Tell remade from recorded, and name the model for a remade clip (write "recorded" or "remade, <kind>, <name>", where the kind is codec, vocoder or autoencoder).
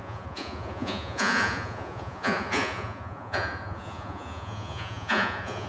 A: remade, vocoder, Vocos